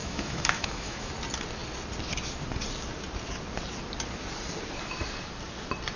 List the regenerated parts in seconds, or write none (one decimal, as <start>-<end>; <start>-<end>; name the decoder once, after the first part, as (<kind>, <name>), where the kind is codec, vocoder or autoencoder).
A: 0.0-1.1 (autoencoder, DAC-VAE)

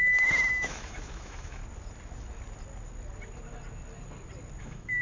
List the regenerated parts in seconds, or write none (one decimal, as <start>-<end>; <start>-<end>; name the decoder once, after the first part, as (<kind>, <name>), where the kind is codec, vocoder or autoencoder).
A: 0.0-1.6 (autoencoder, DAC-VAE); 4.6-5.0